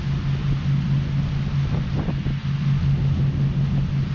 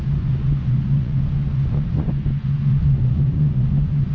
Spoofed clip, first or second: second